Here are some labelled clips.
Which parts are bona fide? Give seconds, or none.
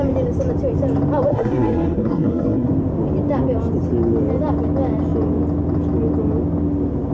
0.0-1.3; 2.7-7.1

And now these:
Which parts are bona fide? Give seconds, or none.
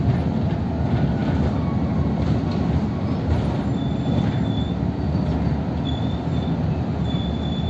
0.0-7.7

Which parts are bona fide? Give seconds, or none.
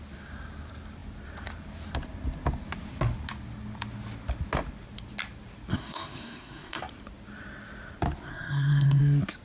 0.0-5.7; 6.8-8.3; 9.0-9.4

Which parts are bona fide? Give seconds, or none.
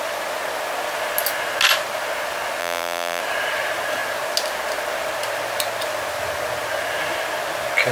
0.0-2.6; 3.2-7.9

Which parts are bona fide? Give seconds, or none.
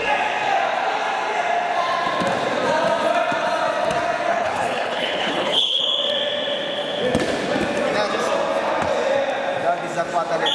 0.0-4.3; 5.8-10.5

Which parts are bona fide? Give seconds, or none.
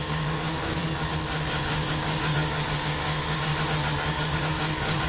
0.8-1.6; 3.5-4.1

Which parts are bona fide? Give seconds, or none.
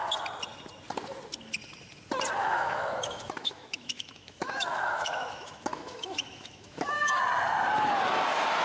0.0-2.4; 7.2-8.6